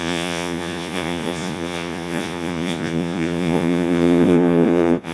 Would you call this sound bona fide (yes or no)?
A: no